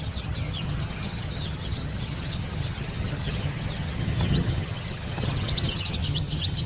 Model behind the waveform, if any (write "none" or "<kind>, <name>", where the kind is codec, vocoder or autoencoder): vocoder, HiFi-GAN